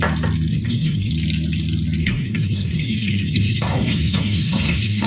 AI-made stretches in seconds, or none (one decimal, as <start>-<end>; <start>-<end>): 0.5-1.1; 2.0-5.1